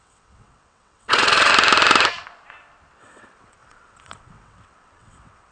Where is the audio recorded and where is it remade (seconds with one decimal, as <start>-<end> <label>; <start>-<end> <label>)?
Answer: 0.0-1.5 remade; 1.5-3.0 recorded; 3.0-5.5 remade